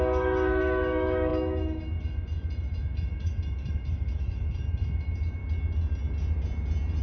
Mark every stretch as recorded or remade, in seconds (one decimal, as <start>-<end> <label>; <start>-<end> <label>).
0.0-5.4 remade; 5.4-7.0 recorded